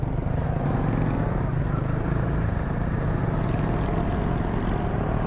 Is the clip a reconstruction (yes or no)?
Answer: no